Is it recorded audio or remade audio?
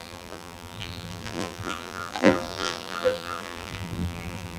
remade